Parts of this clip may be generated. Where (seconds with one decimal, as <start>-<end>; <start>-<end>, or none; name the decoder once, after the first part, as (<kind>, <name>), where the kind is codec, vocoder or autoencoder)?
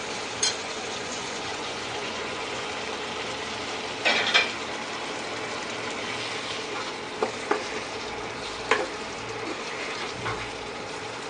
0.6-2.7 (vocoder, Vocos)